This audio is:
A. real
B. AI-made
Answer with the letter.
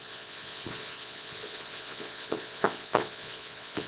B